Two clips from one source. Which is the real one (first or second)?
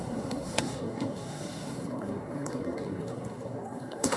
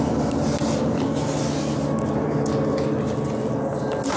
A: second